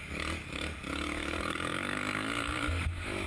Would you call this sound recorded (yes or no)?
no